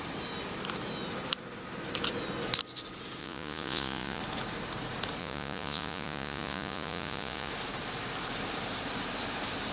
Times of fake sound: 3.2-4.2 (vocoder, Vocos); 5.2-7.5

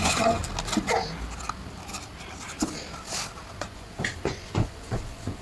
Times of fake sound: 0.0-0.4 (vocoder, Vocos); 3.6-5.4

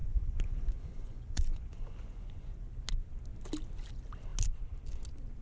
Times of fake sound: 0.0-2.7 (vocoder, Vocos)